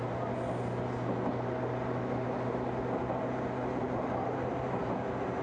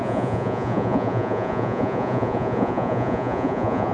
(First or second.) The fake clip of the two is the second